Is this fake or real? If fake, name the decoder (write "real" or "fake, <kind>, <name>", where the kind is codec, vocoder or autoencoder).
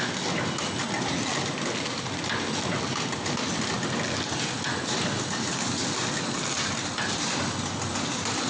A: real